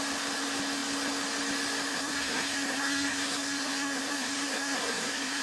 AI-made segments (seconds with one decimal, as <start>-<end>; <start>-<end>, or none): 1.9-5.4